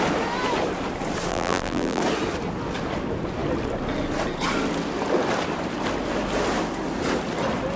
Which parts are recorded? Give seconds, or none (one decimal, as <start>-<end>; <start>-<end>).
0.0-1.3; 2.0-7.8